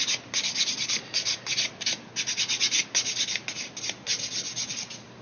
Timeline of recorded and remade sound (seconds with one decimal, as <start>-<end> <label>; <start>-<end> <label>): 0.0-5.2 recorded